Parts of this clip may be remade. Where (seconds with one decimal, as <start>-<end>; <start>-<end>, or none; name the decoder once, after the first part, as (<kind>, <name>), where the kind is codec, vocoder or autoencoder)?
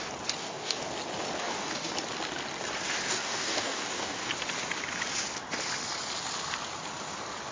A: 0.4-0.9 (codec, DAC); 1.4-1.9; 3.1-4.3